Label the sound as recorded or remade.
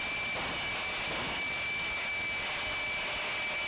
recorded